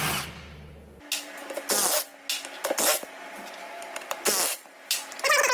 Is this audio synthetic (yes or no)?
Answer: no